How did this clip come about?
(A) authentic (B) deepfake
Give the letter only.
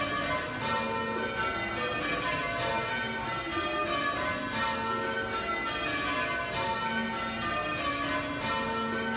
A